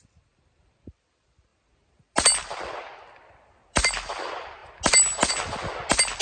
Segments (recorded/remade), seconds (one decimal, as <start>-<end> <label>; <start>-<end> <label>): 0.0-6.2 recorded